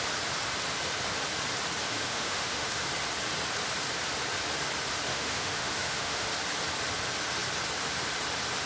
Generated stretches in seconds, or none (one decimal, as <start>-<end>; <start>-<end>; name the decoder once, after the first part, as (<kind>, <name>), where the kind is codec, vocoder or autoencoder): 1.9-2.9 (autoencoder, DAC-VAE); 5.1-6.3